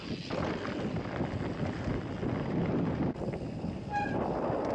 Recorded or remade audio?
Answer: recorded